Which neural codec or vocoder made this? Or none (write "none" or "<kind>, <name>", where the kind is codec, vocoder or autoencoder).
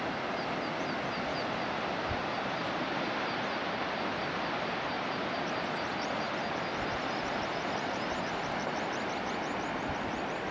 none